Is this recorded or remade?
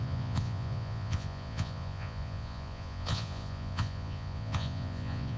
remade